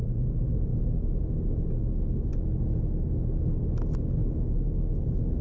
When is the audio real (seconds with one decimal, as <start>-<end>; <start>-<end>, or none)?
0.0-5.4